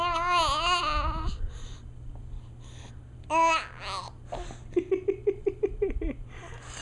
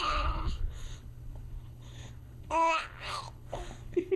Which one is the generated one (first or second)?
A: second